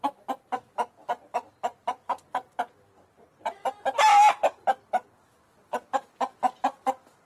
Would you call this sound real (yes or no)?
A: yes